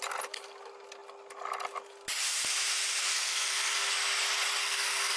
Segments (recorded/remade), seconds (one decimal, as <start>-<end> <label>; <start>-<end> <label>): 0.0-3.1 recorded; 3.1-3.9 remade; 3.9-4.6 recorded; 4.6-5.2 remade